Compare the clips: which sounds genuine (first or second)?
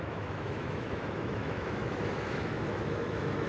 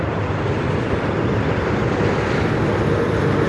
second